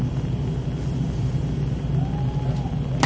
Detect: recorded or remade recorded